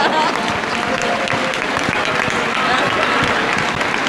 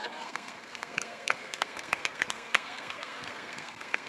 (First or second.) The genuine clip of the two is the first